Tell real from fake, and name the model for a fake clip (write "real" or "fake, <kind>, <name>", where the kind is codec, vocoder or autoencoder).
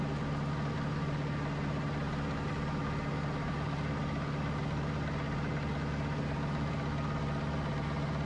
real